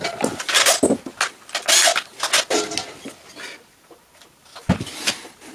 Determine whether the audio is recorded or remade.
recorded